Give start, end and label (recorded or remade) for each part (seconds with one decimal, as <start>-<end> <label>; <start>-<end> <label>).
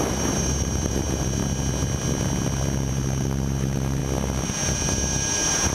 0.0-1.4 remade; 1.4-2.9 recorded; 2.9-4.0 remade; 4.0-4.9 recorded; 4.9-5.7 remade